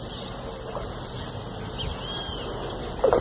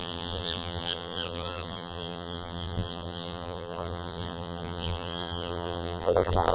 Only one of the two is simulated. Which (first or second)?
second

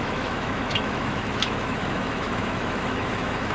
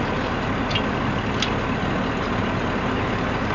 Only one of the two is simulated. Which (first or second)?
first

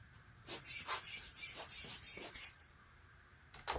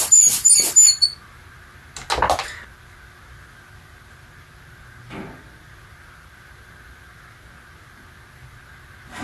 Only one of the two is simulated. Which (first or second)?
first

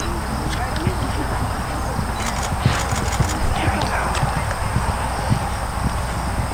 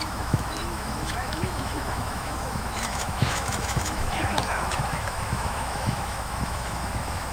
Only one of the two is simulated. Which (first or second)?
second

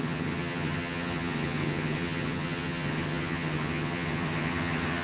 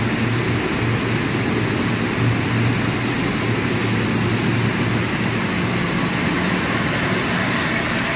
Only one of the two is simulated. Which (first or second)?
first